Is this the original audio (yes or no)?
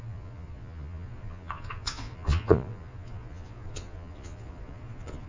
no